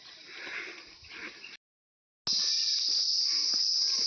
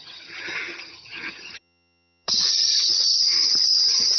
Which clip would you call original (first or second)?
first